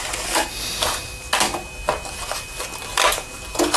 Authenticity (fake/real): real